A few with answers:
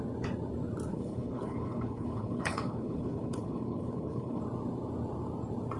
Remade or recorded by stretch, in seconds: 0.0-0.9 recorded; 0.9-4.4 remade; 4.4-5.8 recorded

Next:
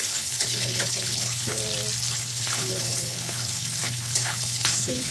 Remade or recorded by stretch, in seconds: 0.0-1.6 remade; 1.6-2.1 recorded; 2.1-5.1 remade

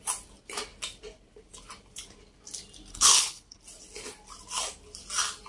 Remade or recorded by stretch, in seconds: 0.0-2.9 recorded; 2.9-3.6 remade; 3.6-5.5 recorded

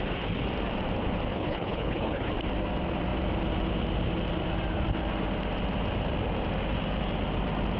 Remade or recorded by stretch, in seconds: 0.0-1.3 recorded; 1.3-2.3 remade; 2.3-7.8 recorded

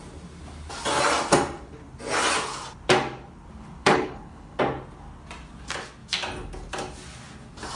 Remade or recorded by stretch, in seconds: 0.0-3.8 recorded; 3.8-4.6 remade; 4.6-7.8 recorded

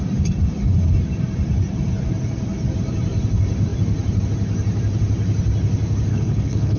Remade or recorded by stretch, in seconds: 0.0-6.1 recorded; 6.1-6.8 remade

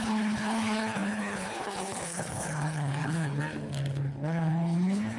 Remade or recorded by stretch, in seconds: 0.0-3.4 remade; 3.4-3.9 recorded; 3.9-5.2 remade